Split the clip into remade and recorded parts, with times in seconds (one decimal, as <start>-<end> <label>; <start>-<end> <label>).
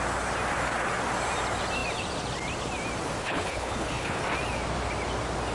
0.0-3.2 recorded; 3.2-4.2 remade; 4.2-5.5 recorded